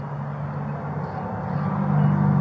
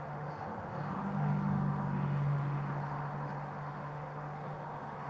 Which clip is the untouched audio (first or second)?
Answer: first